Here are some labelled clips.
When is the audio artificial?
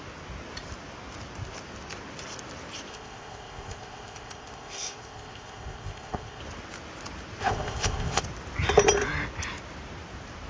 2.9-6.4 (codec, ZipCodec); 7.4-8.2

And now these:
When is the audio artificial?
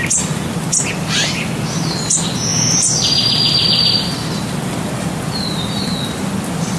2.5-6.8 (vocoder, BigVGAN v2)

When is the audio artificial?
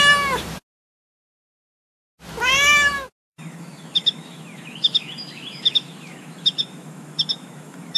3.3-8.0 (autoencoder, DAC-VAE)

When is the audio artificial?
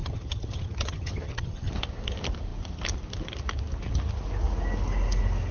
0.0-1.7 (vocoder, HiFi-GAN)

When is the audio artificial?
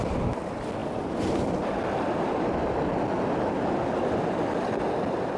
none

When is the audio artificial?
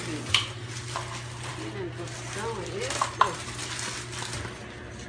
none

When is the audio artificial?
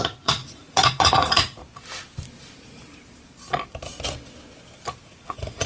0.0-1.6 (vocoder, Vocos); 5.0-5.7